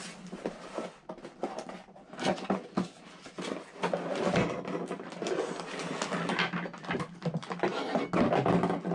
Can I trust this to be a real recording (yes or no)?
yes